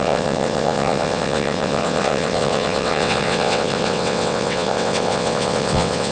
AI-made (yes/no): yes